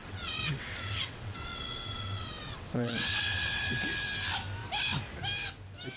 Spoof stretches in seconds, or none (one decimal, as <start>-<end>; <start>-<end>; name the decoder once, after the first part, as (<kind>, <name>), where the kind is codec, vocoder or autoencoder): 0.0-3.6 (vocoder, WaveNeXt)